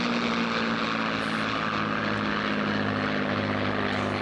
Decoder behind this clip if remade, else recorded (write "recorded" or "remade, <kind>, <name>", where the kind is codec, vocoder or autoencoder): recorded